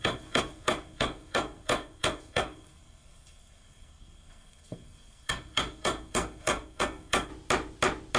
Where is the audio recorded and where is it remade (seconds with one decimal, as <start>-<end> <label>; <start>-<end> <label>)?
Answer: 0.0-7.3 remade; 7.3-8.2 recorded